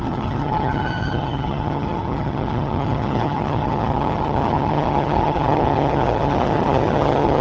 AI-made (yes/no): yes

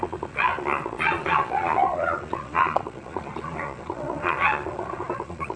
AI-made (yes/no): yes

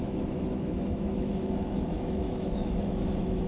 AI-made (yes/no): yes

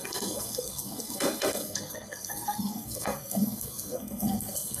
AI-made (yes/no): yes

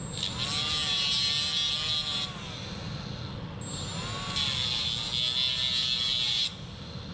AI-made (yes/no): no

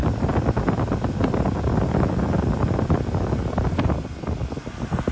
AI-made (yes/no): no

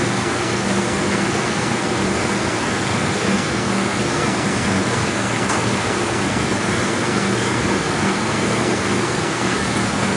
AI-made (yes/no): yes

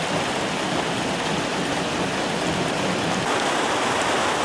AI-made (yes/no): no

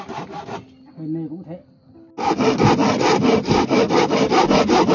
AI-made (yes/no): no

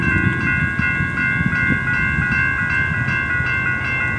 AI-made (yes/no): no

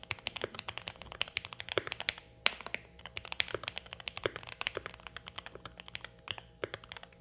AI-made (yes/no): no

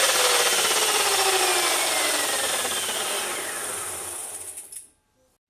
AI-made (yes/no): no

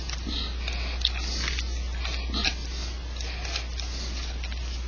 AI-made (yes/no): no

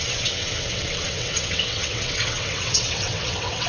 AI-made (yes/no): yes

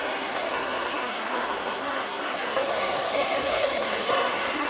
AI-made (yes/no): yes